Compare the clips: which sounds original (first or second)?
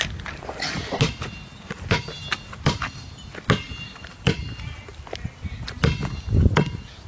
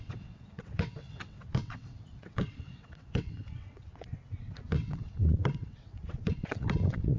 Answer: first